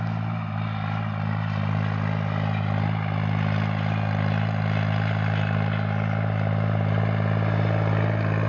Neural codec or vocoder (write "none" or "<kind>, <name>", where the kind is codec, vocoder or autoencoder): none